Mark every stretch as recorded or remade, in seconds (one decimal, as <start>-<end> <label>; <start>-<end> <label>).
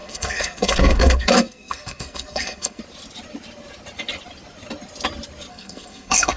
0.0-2.8 remade; 2.8-5.5 recorded; 5.5-6.4 remade